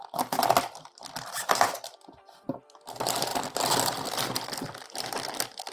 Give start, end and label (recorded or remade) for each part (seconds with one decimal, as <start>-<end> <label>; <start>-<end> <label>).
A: 0.0-5.7 remade